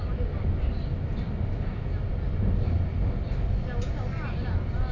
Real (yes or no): yes